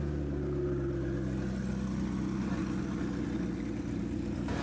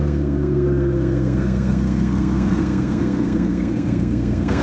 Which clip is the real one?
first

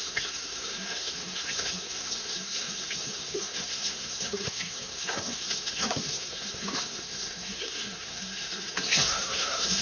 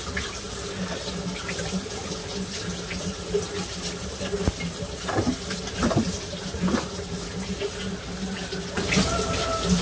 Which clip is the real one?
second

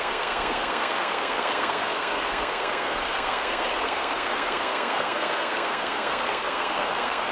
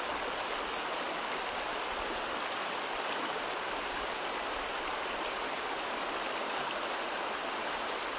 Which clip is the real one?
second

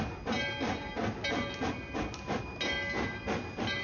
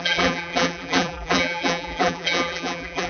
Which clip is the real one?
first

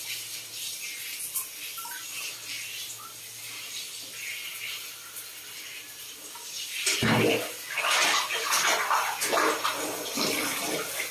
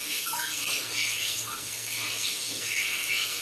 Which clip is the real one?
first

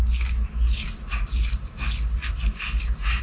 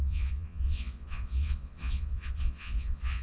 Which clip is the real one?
first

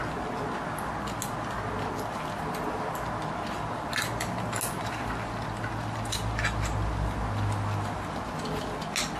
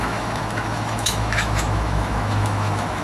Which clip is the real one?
first